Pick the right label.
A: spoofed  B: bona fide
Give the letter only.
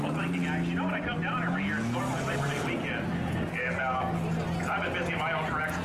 B